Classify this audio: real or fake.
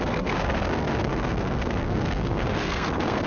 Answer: fake